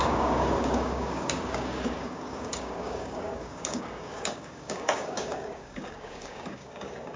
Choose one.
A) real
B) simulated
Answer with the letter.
B